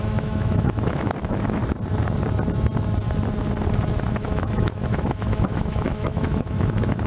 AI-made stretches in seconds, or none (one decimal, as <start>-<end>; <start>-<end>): 0.0-1.6; 4.1-7.1